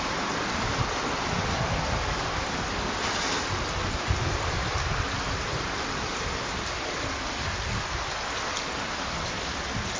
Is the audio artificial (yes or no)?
no